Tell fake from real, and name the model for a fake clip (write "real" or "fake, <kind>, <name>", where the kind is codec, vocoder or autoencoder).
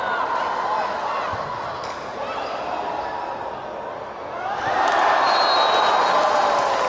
real